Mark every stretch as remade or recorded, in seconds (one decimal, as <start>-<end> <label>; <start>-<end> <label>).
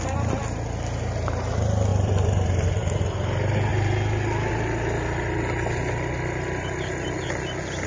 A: 0.0-1.9 recorded; 1.9-2.8 remade; 2.8-7.9 recorded